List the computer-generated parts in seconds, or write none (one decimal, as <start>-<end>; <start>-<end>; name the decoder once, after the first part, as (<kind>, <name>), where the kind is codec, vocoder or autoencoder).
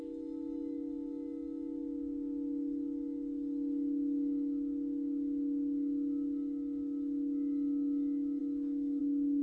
8.4-9.0 (autoencoder, DAC-VAE)